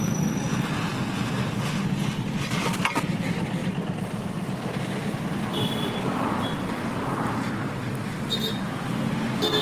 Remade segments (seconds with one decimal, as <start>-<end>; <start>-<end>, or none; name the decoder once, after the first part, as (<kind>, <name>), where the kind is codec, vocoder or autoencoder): none